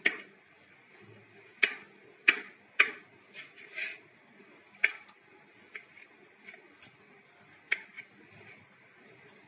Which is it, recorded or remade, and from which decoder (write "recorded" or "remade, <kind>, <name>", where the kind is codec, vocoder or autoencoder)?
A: recorded